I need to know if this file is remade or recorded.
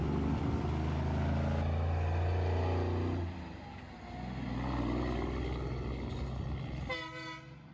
recorded